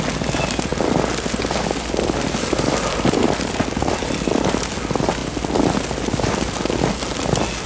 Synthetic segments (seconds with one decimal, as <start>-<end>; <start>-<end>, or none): none